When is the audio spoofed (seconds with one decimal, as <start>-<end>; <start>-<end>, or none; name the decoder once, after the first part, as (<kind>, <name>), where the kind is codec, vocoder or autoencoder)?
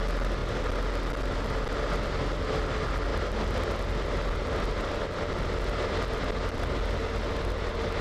none